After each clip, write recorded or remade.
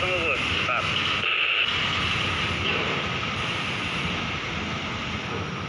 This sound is recorded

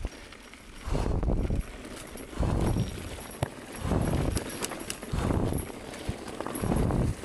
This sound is recorded